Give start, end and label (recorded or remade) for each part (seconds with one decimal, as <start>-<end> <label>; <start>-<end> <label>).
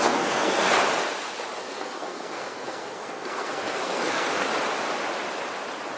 0.0-0.7 remade; 0.7-1.6 recorded; 1.6-4.5 remade; 4.5-6.0 recorded